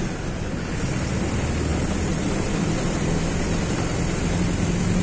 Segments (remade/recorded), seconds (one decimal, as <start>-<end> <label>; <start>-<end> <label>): 0.0-5.0 recorded